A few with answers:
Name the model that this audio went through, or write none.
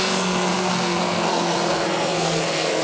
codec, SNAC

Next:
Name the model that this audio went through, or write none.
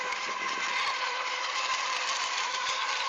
vocoder, BigVGAN v2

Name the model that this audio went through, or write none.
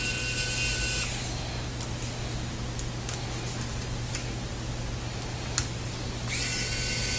none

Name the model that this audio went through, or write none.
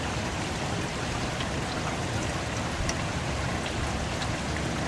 none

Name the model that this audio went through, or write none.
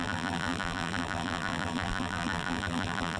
vocoder, BigVGAN v2